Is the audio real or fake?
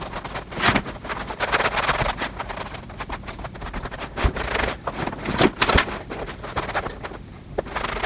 real